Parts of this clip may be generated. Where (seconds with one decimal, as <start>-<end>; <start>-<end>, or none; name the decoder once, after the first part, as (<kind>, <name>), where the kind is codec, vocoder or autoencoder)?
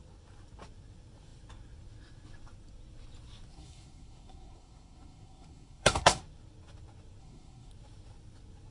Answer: 3.5-6.2 (codec, SNAC); 7.2-7.7